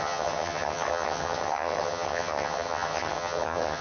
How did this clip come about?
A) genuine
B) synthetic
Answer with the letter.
B